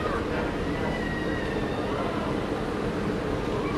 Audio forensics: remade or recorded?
recorded